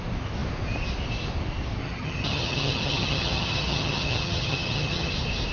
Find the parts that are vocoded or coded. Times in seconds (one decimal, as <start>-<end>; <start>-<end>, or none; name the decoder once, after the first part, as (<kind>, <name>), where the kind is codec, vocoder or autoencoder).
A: 1.8-5.1 (vocoder, HiFi-GAN)